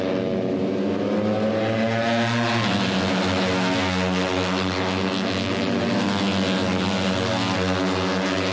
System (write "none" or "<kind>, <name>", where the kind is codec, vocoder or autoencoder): none